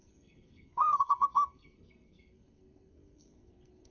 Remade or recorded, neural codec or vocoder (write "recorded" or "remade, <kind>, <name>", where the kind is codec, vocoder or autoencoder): remade, codec, SNAC